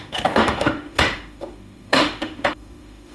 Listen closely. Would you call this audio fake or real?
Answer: fake